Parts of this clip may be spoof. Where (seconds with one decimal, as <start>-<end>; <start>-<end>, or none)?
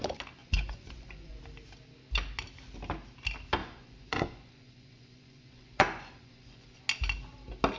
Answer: 0.4-1.4; 3.6-6.8